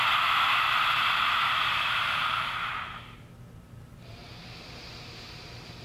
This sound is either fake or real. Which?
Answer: fake